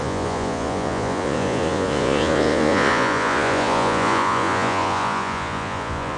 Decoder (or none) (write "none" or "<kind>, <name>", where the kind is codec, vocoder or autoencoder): vocoder, Vocos